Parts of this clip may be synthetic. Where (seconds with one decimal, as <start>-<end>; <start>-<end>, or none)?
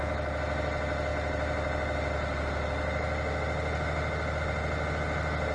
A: none